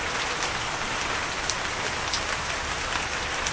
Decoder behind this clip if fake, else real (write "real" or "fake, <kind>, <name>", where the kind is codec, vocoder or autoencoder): real